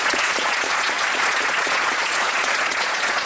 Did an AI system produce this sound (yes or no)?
yes